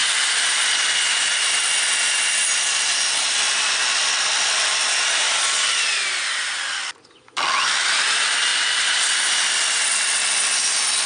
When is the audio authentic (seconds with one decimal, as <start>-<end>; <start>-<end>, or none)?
0.0-11.1